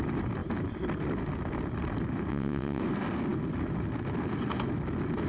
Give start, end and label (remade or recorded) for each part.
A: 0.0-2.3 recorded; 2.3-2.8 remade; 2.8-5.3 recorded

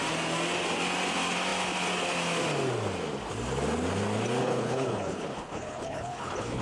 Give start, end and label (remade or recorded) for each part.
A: 0.0-4.4 recorded; 4.4-6.6 remade

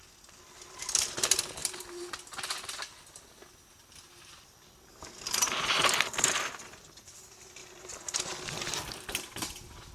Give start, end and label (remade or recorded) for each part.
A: 0.0-9.9 recorded